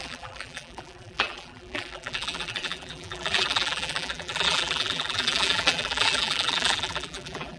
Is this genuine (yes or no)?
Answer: no